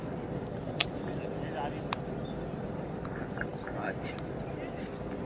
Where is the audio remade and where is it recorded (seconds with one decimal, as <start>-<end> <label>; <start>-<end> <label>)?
0.0-0.8 remade; 0.8-2.8 recorded; 2.8-3.5 remade; 3.5-4.8 recorded; 4.8-5.3 remade